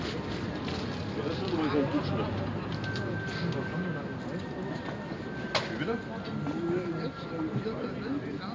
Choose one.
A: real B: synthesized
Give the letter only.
A